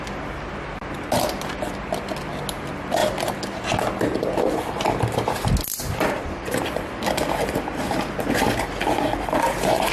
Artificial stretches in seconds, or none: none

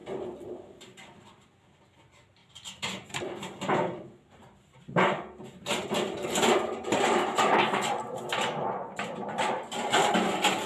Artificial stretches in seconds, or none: 0.0-1.8; 2.4-7.0

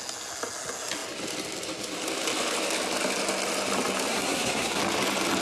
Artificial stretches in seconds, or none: 4.1-4.8

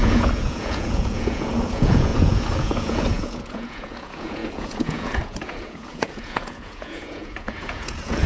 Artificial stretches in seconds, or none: 0.0-8.3